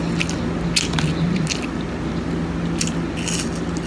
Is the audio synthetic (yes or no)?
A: no